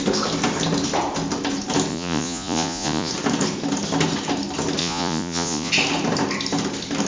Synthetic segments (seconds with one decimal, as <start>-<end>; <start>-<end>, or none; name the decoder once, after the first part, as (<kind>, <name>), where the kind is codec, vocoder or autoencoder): 1.9-3.1 (vocoder, Vocos); 4.8-5.7